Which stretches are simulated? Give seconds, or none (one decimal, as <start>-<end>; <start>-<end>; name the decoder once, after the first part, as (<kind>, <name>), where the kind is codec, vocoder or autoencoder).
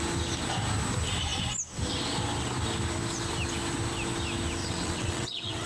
4.6-5.7 (vocoder, WaveNeXt)